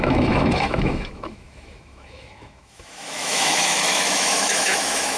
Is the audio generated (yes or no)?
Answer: yes